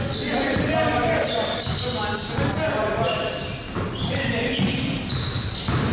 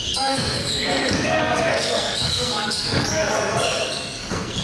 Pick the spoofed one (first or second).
second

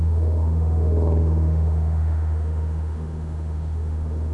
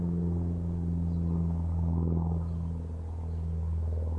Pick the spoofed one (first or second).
first